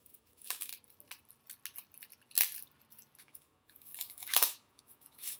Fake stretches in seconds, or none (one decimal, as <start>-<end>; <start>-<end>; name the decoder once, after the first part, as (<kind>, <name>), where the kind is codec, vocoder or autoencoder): 0.0-0.7 (autoencoder, DAC-VAE); 3.2-5.4